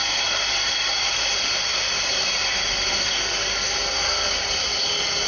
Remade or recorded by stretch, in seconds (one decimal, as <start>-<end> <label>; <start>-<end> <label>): 0.0-5.3 remade